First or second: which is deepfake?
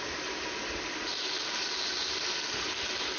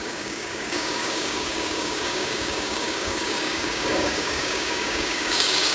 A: second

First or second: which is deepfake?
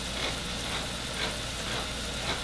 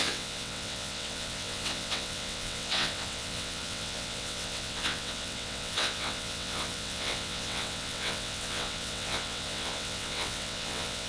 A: second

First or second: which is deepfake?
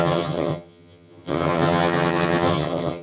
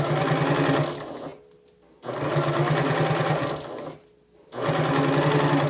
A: first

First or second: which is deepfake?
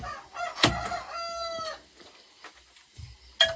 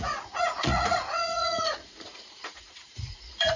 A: second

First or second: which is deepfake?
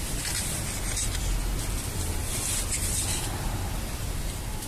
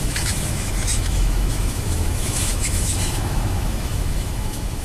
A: second